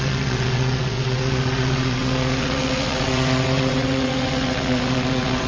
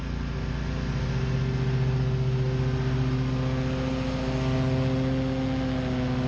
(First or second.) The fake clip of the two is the first